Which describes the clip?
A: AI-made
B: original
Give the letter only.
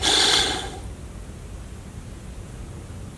B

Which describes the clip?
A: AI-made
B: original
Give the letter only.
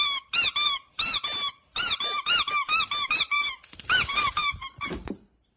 A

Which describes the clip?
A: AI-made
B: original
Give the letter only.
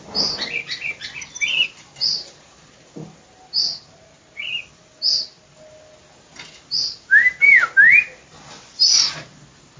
B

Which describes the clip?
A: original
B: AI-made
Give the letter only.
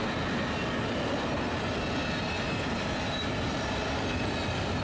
A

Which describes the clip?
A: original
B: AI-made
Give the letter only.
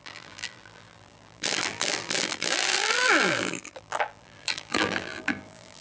B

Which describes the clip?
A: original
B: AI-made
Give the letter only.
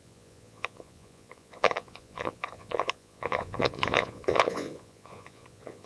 B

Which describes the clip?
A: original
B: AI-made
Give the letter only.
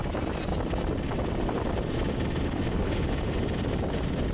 A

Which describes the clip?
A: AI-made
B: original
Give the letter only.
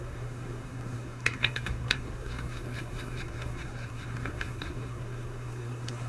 A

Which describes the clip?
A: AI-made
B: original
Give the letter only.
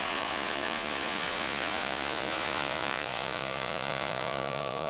A